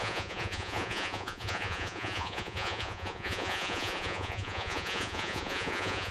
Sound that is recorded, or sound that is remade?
remade